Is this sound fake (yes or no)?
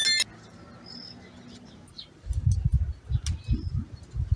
no